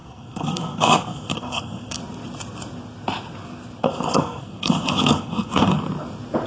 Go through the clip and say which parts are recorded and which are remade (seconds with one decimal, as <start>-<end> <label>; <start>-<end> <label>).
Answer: 0.0-2.0 remade; 2.0-3.8 recorded; 3.8-5.8 remade; 5.8-6.5 recorded